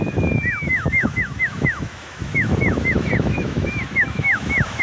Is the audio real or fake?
fake